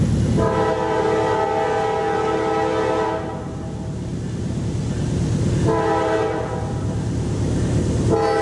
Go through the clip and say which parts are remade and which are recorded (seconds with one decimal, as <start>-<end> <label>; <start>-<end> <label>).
0.0-8.4 recorded